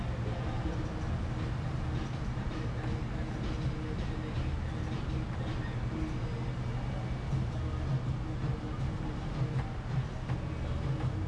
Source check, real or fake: real